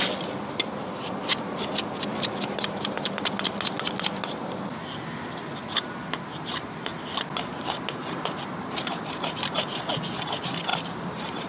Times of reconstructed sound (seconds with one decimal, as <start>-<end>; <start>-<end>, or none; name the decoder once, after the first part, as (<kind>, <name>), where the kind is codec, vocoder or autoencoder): 7.5-9.8 (vocoder, BigVGAN v2); 10.7-11.5